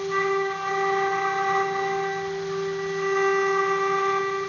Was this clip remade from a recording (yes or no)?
no